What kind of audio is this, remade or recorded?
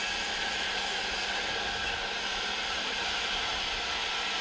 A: recorded